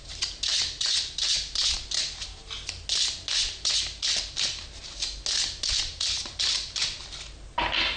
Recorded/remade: recorded